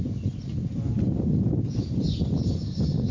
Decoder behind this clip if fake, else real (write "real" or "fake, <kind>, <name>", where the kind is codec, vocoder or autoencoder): real